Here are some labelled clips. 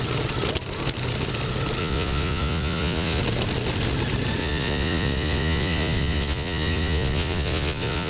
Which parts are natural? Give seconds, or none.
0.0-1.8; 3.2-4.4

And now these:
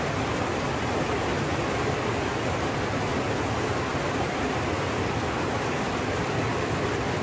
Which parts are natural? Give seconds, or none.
0.0-3.9; 4.5-7.2

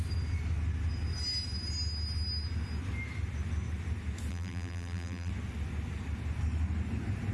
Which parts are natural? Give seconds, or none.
0.0-4.3; 5.3-7.3

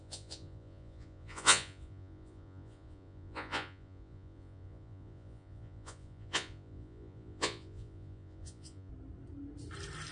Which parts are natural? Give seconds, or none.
8.9-10.1

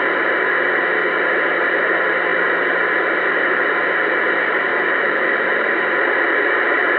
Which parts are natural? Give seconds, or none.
0.0-4.7; 5.8-7.0

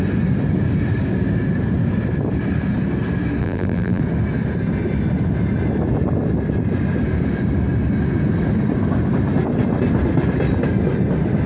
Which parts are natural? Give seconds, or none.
0.0-3.4; 4.0-11.5